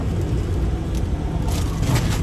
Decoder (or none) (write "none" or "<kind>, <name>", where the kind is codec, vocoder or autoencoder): none